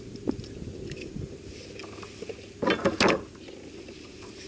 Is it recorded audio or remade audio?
recorded